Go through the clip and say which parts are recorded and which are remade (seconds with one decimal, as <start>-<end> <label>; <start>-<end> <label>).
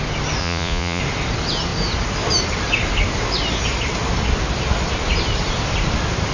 0.0-0.4 recorded; 0.4-1.0 remade; 1.0-6.3 recorded